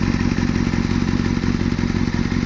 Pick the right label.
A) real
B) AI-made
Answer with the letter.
A